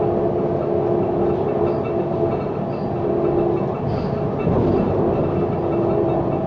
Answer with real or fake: real